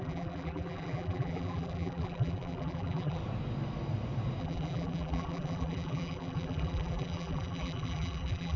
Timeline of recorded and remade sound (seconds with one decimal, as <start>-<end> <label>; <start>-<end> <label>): 0.0-3.2 remade; 3.2-4.4 recorded; 4.4-8.6 remade